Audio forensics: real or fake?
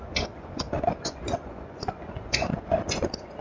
fake